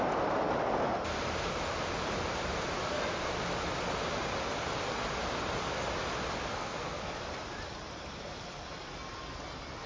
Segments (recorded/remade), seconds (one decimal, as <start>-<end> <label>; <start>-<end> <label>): 0.0-6.5 recorded; 6.5-7.1 remade; 7.1-9.9 recorded